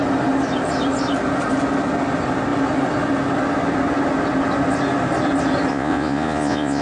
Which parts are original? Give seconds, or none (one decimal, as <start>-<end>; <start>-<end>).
0.0-5.7